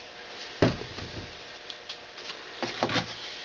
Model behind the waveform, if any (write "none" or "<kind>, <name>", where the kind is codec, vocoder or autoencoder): none